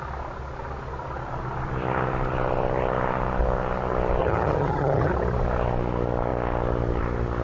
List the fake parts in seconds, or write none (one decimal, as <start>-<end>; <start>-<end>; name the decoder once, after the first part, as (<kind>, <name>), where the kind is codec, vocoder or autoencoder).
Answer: 4.2-5.1 (vocoder, HiFi-GAN)